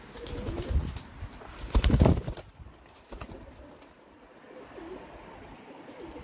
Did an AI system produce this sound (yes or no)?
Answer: no